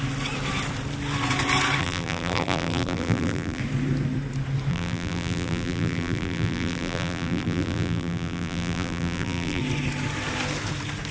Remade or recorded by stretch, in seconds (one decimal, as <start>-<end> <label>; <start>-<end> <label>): 0.0-1.8 recorded; 1.8-3.6 remade; 3.6-4.7 recorded; 4.7-9.6 remade; 9.6-11.1 recorded